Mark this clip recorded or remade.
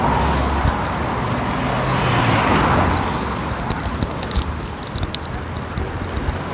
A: recorded